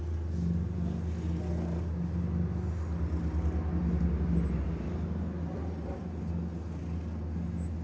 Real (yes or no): yes